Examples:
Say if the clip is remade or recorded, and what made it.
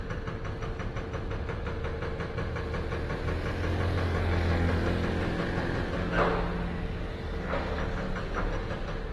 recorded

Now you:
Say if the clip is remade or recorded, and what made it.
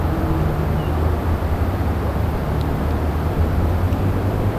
recorded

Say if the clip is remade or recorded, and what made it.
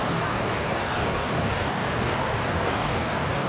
remade, codec, DAC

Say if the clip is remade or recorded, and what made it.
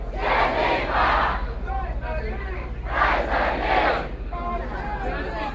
recorded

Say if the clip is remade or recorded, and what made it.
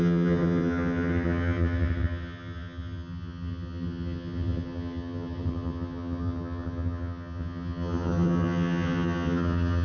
remade, vocoder, HiFi-GAN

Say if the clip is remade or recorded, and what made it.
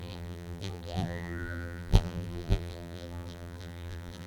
remade, vocoder, BigVGAN v2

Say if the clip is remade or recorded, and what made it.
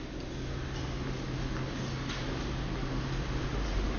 recorded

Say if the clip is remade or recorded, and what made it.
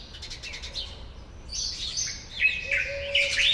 recorded